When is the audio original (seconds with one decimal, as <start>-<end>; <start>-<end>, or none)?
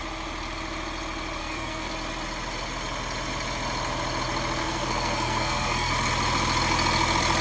0.0-1.4; 1.9-4.6; 5.9-7.4